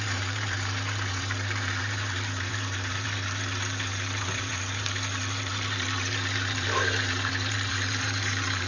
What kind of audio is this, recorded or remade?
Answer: remade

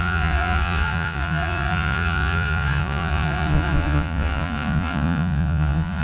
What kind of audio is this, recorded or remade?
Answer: remade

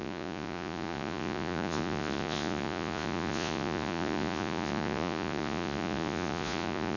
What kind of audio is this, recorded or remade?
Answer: remade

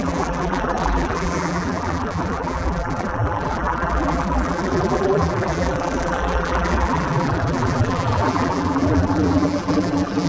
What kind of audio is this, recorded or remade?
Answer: remade